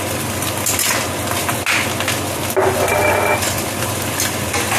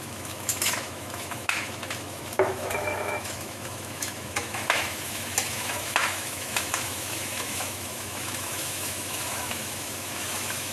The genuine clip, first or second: first